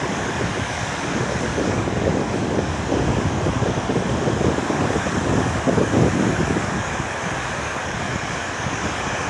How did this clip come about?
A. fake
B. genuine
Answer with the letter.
A